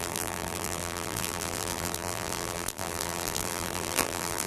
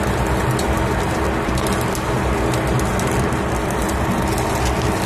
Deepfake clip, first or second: first